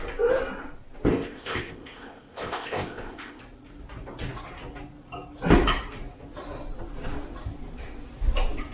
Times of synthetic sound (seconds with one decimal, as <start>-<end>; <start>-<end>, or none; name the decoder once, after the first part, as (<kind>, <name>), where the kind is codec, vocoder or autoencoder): 1.1-3.4 (codec, ZipCodec)